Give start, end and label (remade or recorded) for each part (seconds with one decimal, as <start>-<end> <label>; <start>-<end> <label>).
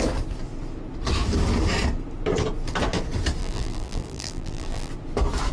0.0-3.4 recorded; 3.4-4.9 remade; 4.9-5.5 recorded